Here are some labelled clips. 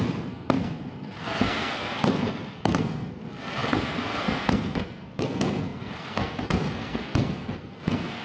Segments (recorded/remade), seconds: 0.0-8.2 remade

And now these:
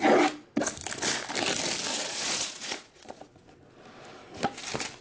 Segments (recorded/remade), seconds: 0.0-1.9 recorded; 1.9-3.2 remade; 3.2-5.0 recorded